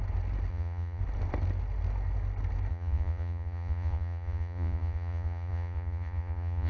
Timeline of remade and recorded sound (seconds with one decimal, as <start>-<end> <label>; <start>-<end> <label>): 0.0-0.5 recorded; 0.5-1.0 remade; 1.0-2.7 recorded; 2.7-6.7 remade

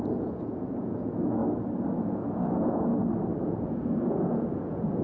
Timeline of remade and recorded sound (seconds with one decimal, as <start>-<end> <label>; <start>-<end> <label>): 0.0-1.4 remade; 1.4-2.0 recorded; 2.0-2.9 remade; 2.9-3.4 recorded; 3.4-5.0 remade